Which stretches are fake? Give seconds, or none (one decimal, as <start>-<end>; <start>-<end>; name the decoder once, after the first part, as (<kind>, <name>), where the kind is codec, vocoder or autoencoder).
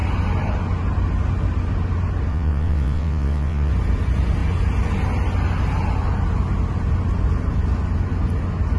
2.3-3.7 (vocoder, WaveNeXt)